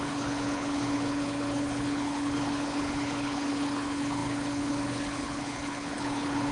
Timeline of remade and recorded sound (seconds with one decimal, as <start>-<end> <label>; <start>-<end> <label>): 0.0-6.5 remade